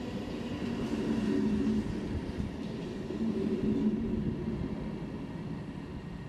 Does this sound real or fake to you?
real